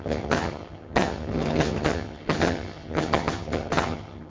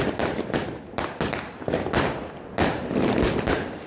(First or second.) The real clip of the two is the second